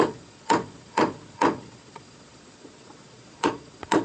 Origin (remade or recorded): remade